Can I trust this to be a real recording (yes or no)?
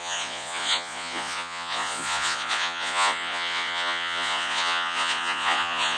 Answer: no